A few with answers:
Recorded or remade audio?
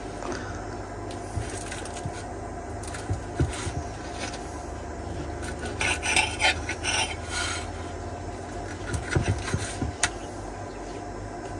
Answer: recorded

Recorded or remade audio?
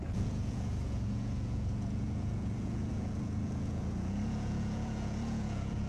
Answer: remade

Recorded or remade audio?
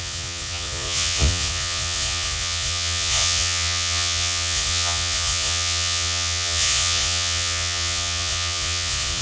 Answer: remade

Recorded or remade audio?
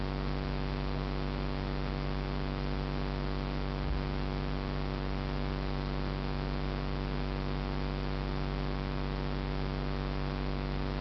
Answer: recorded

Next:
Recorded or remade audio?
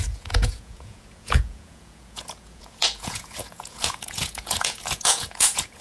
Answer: remade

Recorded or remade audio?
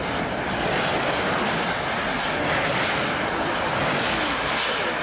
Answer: recorded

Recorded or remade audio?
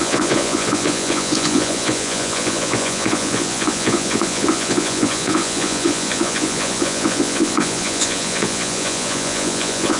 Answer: remade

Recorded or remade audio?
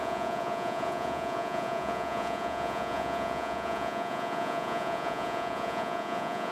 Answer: remade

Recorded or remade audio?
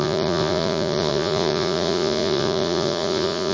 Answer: remade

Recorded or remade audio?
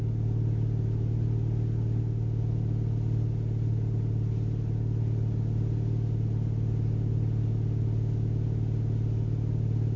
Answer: recorded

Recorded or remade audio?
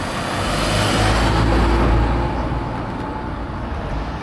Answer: recorded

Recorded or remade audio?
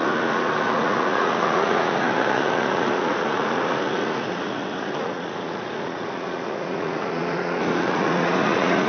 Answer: remade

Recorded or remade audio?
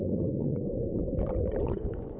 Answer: remade